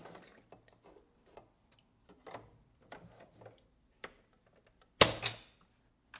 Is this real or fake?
real